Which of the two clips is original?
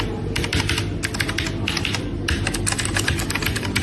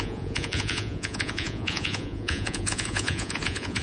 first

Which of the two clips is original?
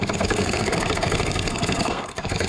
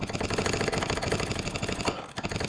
second